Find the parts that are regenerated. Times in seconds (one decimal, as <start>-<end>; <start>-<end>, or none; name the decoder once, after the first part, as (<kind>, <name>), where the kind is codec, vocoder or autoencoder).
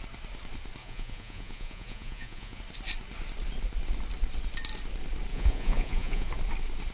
0.8-2.6 (vocoder, Vocos); 5.3-6.3